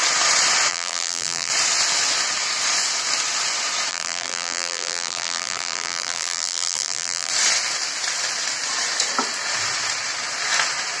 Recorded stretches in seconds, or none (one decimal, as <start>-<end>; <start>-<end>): 0.0-0.7; 1.5-3.9; 7.3-11.0